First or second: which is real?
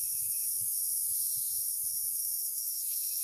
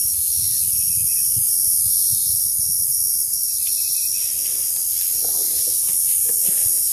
second